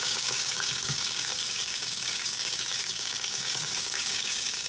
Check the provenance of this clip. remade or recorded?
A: remade